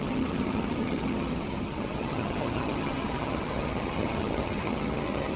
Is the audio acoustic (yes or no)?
no